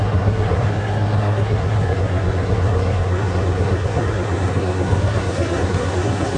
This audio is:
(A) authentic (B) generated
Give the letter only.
B